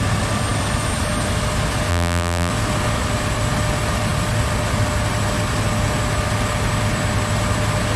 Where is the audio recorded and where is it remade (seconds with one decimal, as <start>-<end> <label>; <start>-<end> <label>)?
0.0-1.9 recorded; 1.9-2.5 remade; 2.5-8.0 recorded

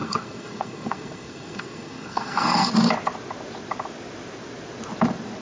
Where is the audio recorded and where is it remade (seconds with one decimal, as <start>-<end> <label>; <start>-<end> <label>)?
0.0-2.7 remade; 2.7-5.4 recorded

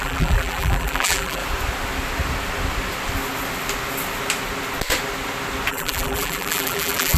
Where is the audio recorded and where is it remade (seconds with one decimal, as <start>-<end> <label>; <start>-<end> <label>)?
0.0-1.4 remade; 1.4-5.7 recorded; 5.7-7.2 remade

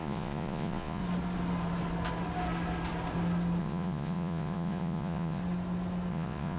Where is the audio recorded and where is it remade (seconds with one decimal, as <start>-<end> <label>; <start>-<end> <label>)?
0.0-1.0 remade; 1.0-3.6 recorded; 3.6-5.4 remade; 5.4-6.1 recorded; 6.1-6.6 remade

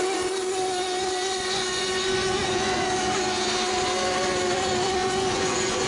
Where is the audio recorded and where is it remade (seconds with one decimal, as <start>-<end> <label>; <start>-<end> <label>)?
0.0-1.3 recorded; 1.3-2.8 remade; 2.8-5.0 recorded; 5.0-5.9 remade

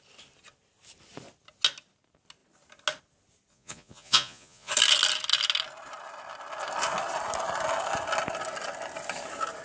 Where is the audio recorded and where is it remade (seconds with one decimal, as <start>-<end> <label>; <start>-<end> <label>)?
0.0-3.5 recorded; 3.5-4.7 remade; 4.7-9.6 recorded